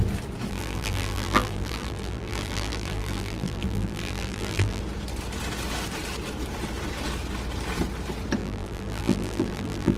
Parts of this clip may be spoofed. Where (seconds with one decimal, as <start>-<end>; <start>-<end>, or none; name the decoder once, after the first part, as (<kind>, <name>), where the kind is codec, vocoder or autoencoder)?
0.5-4.8 (vocoder, BigVGAN v2); 8.4-10.0